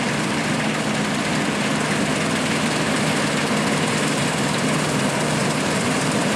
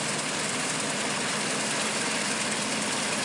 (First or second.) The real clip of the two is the second